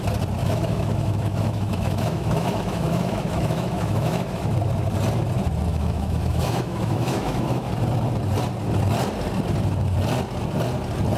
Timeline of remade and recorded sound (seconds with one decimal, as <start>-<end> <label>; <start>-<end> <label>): 0.0-0.4 recorded; 0.4-4.5 remade; 4.5-5.7 recorded; 5.7-7.7 remade; 7.7-11.2 recorded